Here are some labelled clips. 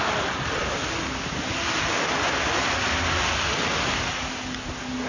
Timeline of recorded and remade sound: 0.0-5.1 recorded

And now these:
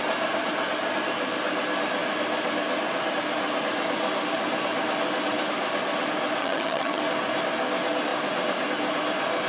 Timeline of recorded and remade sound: 0.0-6.4 recorded; 6.4-7.0 remade; 7.0-9.5 recorded

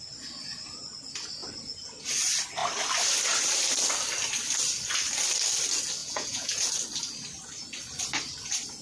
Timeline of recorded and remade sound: 0.0-6.0 recorded; 6.0-6.7 remade; 6.7-8.8 recorded

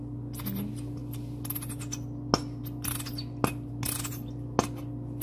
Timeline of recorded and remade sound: 0.0-5.2 recorded